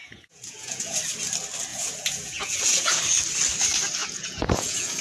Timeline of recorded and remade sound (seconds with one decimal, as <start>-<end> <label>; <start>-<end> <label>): 0.0-1.0 remade; 1.0-1.7 recorded; 1.7-3.0 remade; 3.0-4.0 recorded; 4.0-5.0 remade